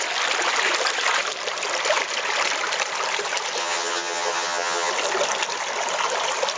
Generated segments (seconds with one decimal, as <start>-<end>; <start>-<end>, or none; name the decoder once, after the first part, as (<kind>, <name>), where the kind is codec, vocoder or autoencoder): 3.6-4.9 (vocoder, HiFi-GAN)